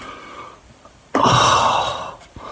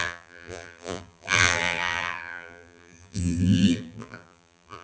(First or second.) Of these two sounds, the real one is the first